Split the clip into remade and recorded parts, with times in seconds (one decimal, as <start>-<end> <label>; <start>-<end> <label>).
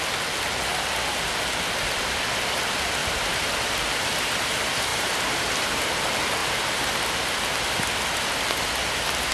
0.0-3.0 recorded; 3.0-3.5 remade; 3.5-4.9 recorded; 4.9-5.9 remade; 5.9-6.4 recorded; 6.4-7.0 remade; 7.0-9.3 recorded